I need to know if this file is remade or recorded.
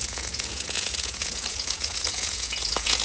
remade